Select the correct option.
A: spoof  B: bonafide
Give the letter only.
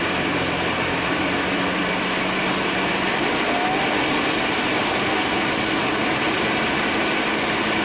B